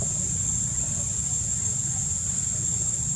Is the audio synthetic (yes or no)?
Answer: no